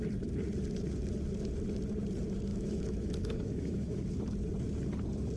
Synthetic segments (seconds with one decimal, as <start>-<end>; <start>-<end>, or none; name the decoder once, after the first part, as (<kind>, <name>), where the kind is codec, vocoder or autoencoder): 2.5-4.0 (autoencoder, DAC-VAE)